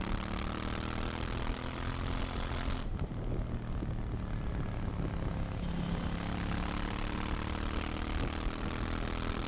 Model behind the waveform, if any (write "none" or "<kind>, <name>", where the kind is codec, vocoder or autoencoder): none